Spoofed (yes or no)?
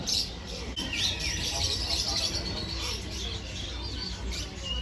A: no